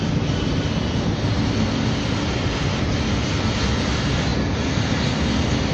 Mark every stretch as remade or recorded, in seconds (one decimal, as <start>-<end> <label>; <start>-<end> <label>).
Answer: 0.0-5.7 recorded